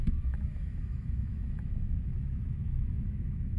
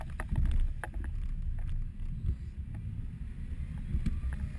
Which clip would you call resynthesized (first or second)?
first